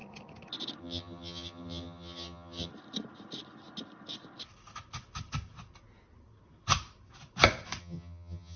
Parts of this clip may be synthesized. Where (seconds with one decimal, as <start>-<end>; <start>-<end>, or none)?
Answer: 0.8-2.7; 7.8-8.6